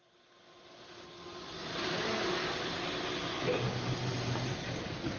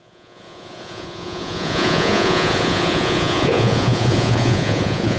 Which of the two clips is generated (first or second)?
second